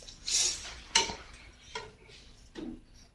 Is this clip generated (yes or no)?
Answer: no